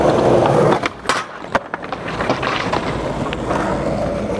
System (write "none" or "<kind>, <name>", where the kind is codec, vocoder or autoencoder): none